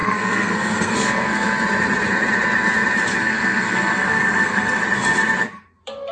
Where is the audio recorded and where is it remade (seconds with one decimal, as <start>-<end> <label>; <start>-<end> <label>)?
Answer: 0.0-1.5 remade; 1.5-3.2 recorded; 3.2-4.8 remade; 4.8-6.1 recorded